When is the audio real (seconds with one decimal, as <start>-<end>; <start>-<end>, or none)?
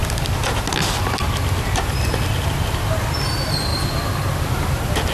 0.0-5.1